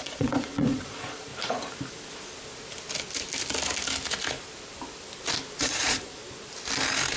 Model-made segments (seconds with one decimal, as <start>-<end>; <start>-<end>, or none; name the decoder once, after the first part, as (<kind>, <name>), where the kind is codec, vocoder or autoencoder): 0.0-1.3 (vocoder, Vocos); 5.6-6.2